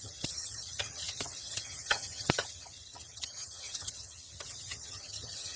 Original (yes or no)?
no